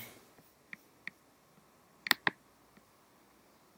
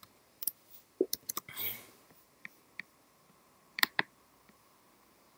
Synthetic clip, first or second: second